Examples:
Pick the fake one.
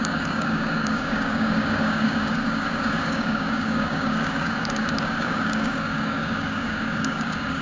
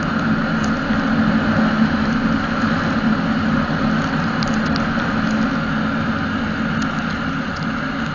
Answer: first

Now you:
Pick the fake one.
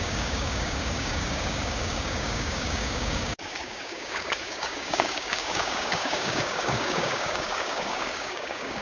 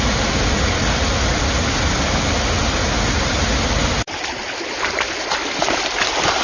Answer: first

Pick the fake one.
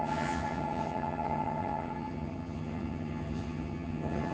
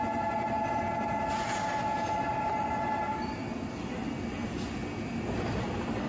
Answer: first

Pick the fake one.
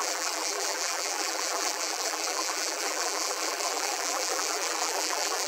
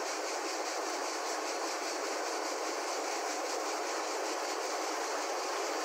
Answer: first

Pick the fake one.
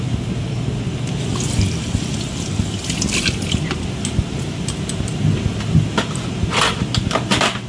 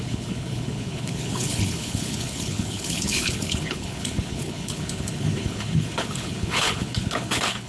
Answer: second